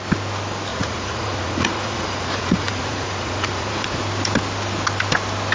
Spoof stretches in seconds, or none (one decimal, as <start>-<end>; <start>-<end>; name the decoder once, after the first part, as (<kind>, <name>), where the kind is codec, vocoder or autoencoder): 0.7-4.0 (vocoder, Vocos)